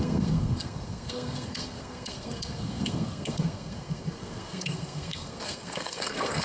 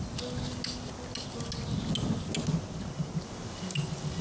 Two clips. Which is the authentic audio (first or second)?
second